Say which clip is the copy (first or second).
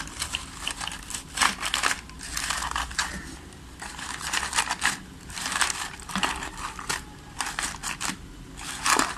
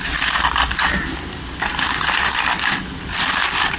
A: second